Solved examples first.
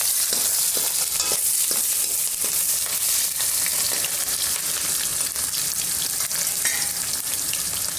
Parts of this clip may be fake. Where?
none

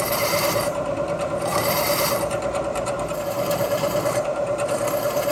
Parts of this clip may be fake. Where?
1.5-4.7 (vocoder, BigVGAN v2)

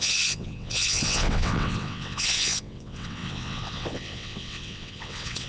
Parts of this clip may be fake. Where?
0.0-5.5 (vocoder, WaveNeXt)

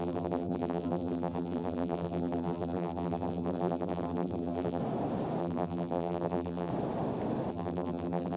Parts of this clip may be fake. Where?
0.0-4.8 (vocoder, BigVGAN v2); 5.4-6.7; 7.5-8.4

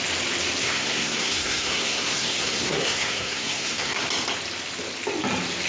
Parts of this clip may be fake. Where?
0.6-4.0 (codec, SNAC)

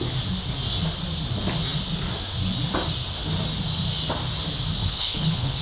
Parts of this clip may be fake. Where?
4.8-5.6 (codec, HILCodec)

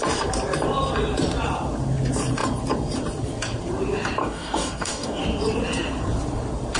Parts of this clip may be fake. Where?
4.2-5.2 (codec, DAC)

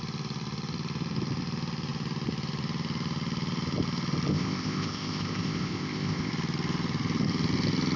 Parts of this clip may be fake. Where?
4.3-6.3 (codec, ZipCodec)